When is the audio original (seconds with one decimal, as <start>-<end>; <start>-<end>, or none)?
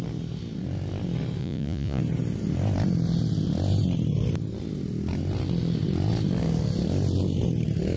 0.0-1.4; 2.0-8.0